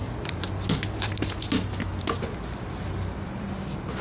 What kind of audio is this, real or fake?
real